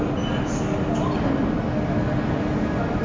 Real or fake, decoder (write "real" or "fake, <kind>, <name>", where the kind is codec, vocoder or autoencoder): real